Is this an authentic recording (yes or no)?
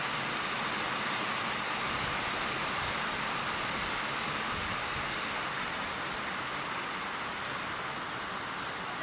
yes